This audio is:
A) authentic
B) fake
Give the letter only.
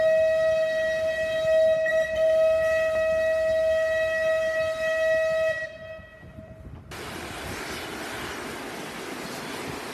A